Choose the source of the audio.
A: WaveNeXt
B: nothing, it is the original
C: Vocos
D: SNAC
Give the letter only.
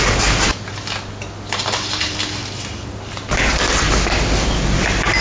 B